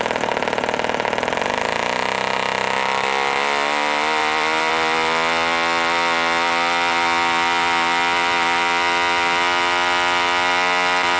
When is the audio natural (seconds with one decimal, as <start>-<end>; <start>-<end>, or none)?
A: 0.0-4.2; 4.7-11.2